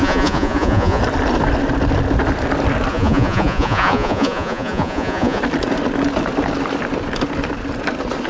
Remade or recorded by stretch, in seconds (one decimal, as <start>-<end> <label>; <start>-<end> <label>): 0.0-1.0 remade; 1.0-2.9 recorded; 2.9-5.4 remade; 5.4-8.3 recorded

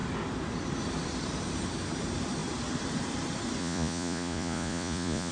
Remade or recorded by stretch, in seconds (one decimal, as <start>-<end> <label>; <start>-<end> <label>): 0.0-3.6 recorded; 3.6-5.3 remade

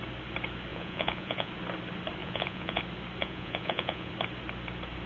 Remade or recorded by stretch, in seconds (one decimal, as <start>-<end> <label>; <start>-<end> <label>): 0.0-0.7 recorded; 0.7-1.5 remade; 1.5-2.2 recorded; 2.2-2.8 remade; 2.8-3.2 recorded; 3.2-4.1 remade; 4.1-5.1 recorded

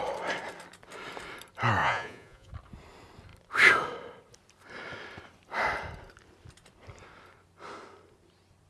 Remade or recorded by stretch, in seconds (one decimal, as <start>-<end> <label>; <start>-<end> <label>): 0.0-1.8 recorded; 1.8-2.5 remade; 2.5-8.7 recorded

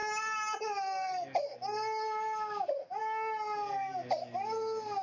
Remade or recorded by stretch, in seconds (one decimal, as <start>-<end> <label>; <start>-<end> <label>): 0.0-5.0 recorded